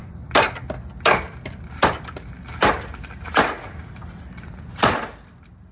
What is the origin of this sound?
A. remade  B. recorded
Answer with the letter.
B